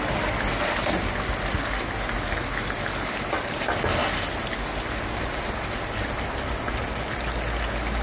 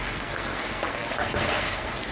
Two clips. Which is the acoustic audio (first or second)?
first